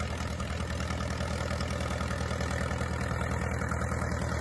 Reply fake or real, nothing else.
real